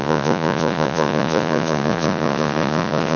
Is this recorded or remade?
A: remade